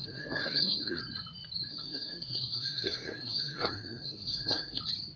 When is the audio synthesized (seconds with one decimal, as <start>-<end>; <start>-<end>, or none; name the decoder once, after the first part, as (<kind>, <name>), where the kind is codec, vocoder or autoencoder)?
0.0-1.0 (codec, SNAC); 1.7-4.8